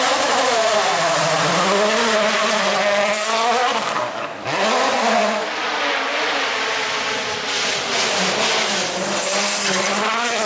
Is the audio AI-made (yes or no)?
no